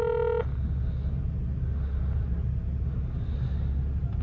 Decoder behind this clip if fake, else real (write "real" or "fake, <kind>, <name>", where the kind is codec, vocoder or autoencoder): real